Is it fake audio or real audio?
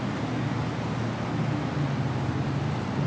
real